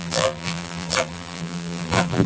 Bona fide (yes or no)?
no